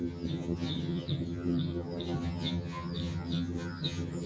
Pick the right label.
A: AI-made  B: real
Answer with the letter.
A